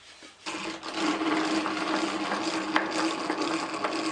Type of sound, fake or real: real